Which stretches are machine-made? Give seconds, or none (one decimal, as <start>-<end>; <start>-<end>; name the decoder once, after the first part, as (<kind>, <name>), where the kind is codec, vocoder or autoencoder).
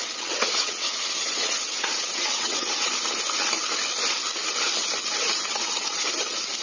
0.0-2.9 (vocoder, WaveNeXt); 5.5-6.1